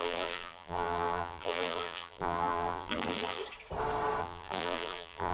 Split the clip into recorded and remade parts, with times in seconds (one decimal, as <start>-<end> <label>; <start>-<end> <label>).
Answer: 0.0-3.4 remade; 3.4-4.2 recorded; 4.2-5.3 remade